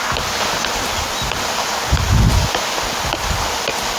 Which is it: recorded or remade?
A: recorded